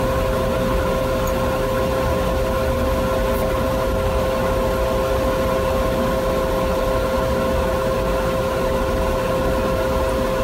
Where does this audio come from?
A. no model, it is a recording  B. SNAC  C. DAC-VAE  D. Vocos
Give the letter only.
A